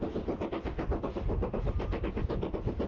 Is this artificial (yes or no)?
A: no